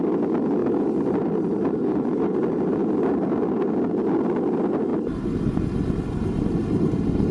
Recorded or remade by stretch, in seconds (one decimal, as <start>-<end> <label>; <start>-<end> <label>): 0.0-0.6 recorded; 0.6-2.2 remade; 2.2-4.9 recorded; 4.9-7.3 remade